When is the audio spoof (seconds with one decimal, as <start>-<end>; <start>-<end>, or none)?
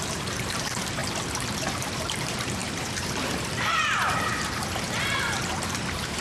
0.0-1.0; 1.7-6.2